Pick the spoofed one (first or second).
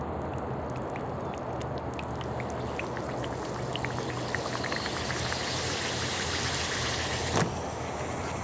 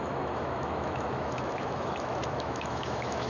second